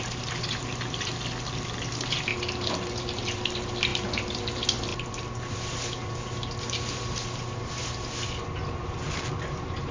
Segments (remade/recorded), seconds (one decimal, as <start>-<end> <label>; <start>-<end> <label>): 0.0-9.9 recorded